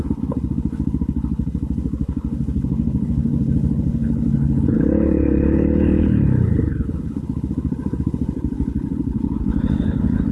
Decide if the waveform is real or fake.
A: fake